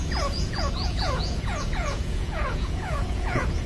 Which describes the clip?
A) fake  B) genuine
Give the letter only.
A